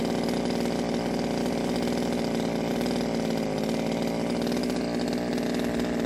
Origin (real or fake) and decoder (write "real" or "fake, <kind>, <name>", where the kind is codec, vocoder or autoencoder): real